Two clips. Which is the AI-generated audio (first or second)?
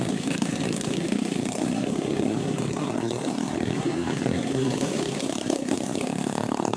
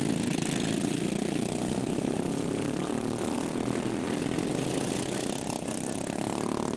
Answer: first